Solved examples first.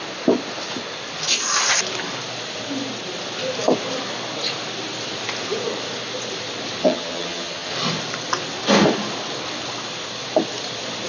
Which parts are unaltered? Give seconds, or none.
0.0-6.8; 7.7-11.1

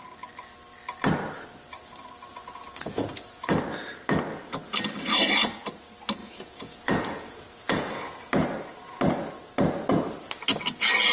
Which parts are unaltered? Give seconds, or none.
0.0-2.3; 3.5-6.2; 8.3-11.1

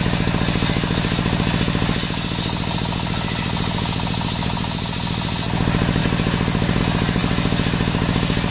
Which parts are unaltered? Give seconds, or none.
0.0-8.5

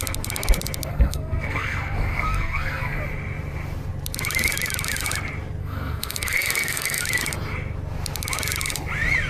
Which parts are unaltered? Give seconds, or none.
0.0-0.9; 3.0-5.6; 7.0-9.3

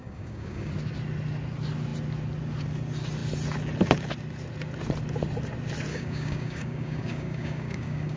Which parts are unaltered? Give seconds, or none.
0.7-5.9